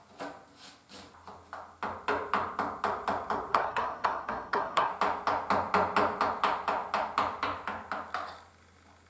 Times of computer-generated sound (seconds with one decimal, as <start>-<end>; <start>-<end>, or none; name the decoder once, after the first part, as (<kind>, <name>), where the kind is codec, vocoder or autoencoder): 3.5-4.9 (codec, SNAC)